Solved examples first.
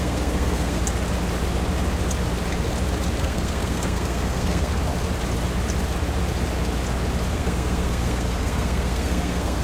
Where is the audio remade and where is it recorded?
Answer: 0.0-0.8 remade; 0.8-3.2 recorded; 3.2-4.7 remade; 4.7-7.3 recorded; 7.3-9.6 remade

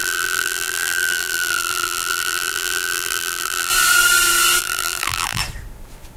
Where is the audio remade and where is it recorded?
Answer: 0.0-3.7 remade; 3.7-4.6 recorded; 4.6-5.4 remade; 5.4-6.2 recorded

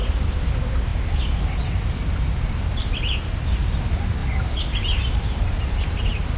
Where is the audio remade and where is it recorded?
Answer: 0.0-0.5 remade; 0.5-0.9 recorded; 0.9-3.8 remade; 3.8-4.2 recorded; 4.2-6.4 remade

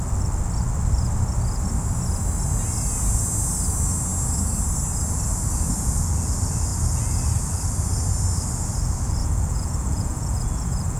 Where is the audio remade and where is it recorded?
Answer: 0.0-9.2 recorded; 9.2-11.0 remade

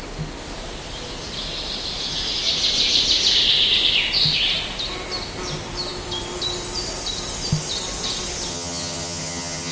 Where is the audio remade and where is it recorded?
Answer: 0.0-8.5 recorded; 8.5-9.7 remade

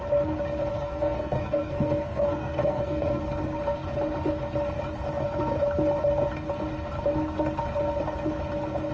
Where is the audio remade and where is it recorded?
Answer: 0.0-0.7 recorded; 0.7-3.2 remade; 3.2-8.9 recorded